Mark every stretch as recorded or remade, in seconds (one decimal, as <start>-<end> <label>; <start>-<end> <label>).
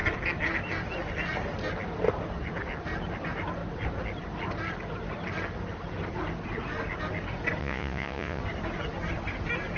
0.0-7.6 recorded; 7.6-8.4 remade; 8.4-9.8 recorded